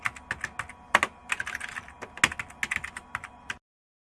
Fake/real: real